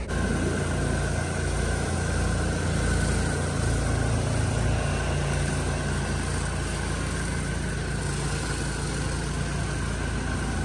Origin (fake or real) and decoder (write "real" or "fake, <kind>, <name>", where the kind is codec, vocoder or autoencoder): real